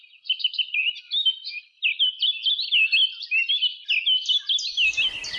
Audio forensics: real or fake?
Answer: real